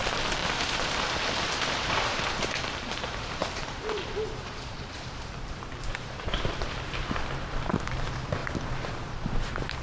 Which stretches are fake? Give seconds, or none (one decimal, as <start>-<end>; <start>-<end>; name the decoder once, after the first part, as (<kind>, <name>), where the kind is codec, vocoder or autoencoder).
0.0-0.4 (vocoder, BigVGAN v2); 1.8-9.8